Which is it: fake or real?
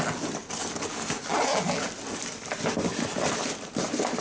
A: real